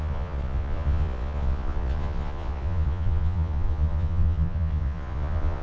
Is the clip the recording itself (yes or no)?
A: no